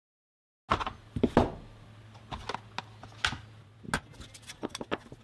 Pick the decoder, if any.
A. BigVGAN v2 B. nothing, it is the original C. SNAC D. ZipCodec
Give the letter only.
B